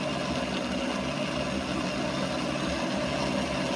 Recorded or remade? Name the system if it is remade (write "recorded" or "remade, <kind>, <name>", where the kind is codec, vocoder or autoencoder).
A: recorded